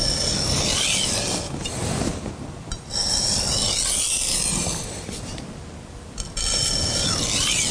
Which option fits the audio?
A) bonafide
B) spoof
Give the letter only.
A